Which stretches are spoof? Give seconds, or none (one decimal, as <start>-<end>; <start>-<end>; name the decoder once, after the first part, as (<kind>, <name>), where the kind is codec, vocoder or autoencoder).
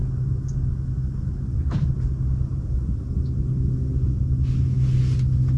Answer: none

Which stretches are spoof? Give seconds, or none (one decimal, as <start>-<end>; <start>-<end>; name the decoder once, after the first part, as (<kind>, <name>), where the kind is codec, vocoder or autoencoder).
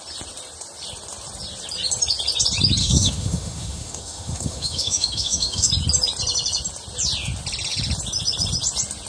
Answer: 2.8-5.7 (autoencoder, DAC-VAE)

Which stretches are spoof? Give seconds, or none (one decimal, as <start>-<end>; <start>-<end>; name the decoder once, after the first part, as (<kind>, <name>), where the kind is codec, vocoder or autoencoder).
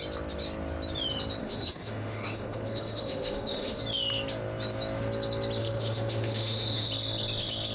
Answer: 1.4-3.8 (autoencoder, DAC-VAE); 5.6-6.9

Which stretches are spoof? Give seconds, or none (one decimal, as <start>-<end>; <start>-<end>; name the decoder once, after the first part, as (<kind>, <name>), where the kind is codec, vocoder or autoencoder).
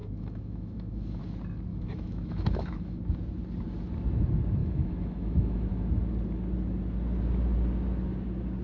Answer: 0.0-1.2 (autoencoder, DAC-VAE); 1.7-3.0; 4.6-5.7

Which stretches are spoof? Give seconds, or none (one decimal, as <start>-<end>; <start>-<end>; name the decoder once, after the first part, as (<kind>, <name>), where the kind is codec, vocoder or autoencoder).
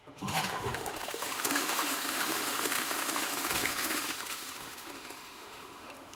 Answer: 0.0-6.2 (autoencoder, DAC-VAE)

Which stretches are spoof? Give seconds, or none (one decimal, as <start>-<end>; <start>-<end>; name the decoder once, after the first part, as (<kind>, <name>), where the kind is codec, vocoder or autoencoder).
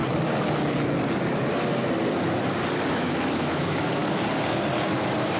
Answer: 2.9-4.0 (autoencoder, DAC-VAE)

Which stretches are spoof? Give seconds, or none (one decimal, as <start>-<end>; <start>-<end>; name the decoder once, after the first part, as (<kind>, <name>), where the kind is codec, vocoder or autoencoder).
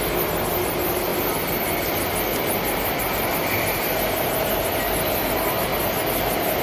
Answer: none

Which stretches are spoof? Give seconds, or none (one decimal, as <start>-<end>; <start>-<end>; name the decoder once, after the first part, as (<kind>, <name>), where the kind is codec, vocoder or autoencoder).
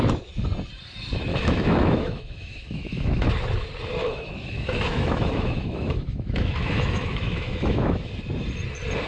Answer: 1.3-3.3 (autoencoder, DAC-VAE); 4.0-8.1